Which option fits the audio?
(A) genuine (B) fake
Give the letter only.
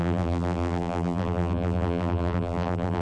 B